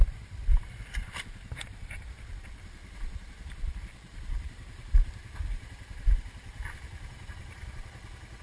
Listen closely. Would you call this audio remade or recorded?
recorded